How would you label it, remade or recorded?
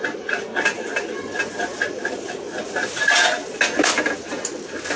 recorded